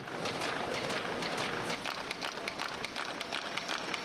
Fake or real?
real